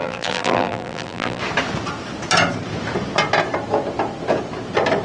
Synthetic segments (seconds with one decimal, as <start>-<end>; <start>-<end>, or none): 0.0-1.4